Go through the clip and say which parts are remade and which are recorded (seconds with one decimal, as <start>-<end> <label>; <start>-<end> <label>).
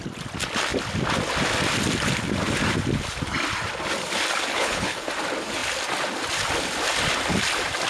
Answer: 0.0-4.5 recorded; 4.5-5.1 remade; 5.1-7.9 recorded